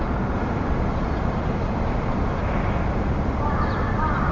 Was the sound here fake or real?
real